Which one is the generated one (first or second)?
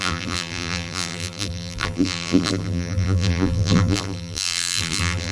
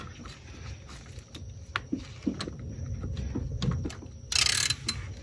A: first